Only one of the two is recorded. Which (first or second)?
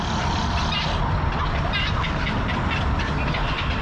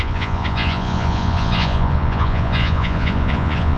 first